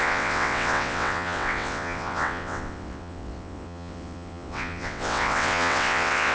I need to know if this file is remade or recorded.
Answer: remade